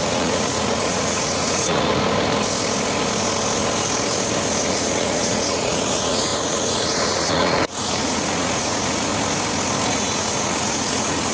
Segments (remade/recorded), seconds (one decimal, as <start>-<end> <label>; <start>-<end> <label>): 0.0-1.9 remade; 1.9-4.6 recorded; 4.6-9.1 remade; 9.1-9.9 recorded; 9.9-11.3 remade